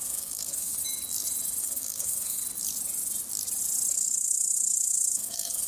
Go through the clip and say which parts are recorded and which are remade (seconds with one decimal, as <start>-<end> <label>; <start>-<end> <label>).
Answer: 0.0-0.8 remade; 0.8-1.6 recorded; 1.6-2.4 remade; 2.4-3.9 recorded; 3.9-5.7 remade